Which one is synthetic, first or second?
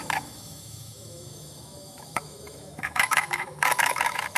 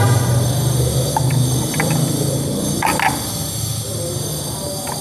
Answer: first